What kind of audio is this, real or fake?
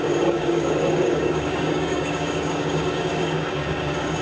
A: fake